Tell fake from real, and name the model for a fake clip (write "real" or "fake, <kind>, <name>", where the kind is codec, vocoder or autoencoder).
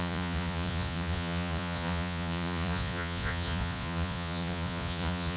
fake, vocoder, Vocos